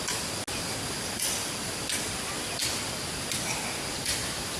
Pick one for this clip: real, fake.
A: real